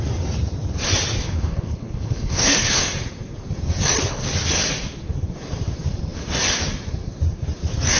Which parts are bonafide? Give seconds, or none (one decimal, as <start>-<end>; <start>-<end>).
0.0-1.2; 2.8-8.0